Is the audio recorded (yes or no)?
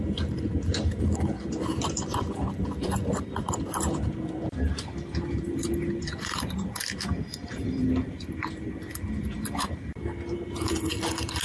no